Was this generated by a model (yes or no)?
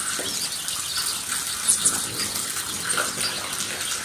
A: no